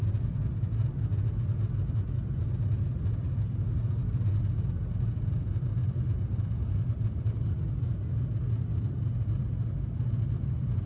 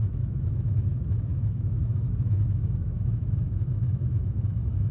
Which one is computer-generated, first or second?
second